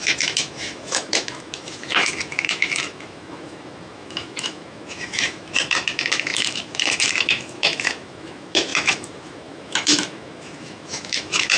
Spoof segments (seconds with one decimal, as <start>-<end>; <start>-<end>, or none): 0.0-11.6